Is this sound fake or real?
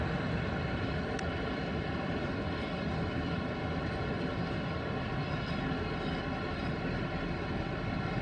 real